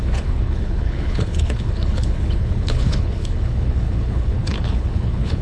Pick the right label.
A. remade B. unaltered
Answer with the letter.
A